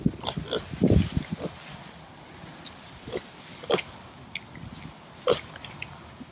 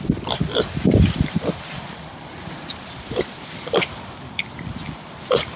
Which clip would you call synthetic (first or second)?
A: second